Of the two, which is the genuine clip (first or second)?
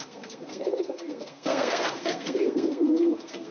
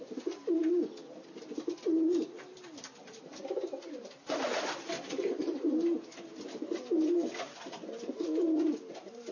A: second